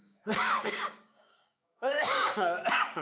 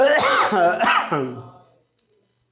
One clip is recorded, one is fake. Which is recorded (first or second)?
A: second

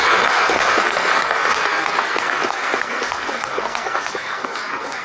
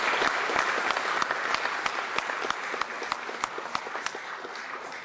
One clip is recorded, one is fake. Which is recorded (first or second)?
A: second